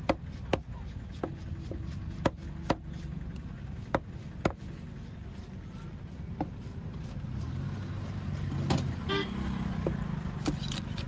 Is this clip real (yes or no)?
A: yes